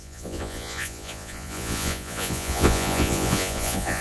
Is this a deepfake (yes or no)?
yes